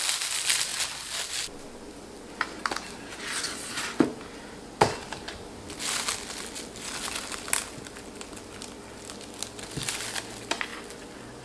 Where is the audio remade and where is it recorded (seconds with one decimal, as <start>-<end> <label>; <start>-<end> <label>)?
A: 0.0-11.4 recorded